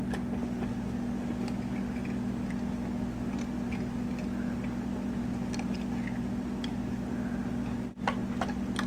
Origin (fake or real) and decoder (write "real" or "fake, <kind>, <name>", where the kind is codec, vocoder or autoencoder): real